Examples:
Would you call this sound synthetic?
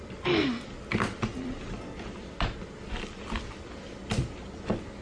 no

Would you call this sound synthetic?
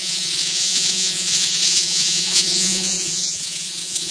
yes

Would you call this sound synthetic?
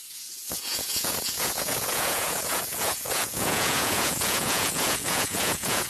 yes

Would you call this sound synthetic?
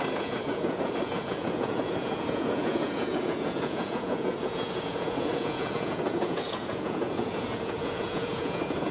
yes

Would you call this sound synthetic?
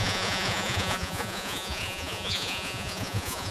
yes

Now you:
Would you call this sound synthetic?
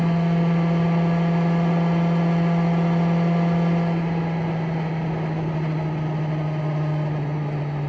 no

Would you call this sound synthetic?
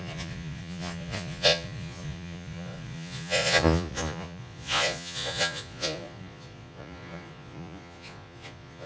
yes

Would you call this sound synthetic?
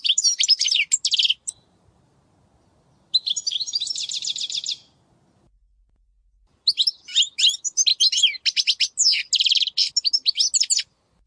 no